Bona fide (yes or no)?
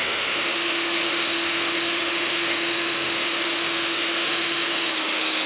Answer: no